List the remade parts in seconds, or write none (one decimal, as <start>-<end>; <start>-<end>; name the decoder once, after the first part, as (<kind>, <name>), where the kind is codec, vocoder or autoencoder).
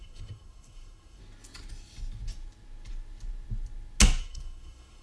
0.0-1.2 (codec, SNAC); 4.2-5.0